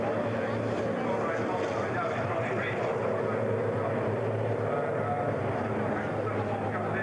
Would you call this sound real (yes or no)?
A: yes